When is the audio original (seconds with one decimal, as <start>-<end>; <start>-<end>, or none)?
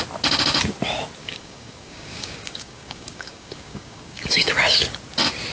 0.0-1.2; 4.5-5.5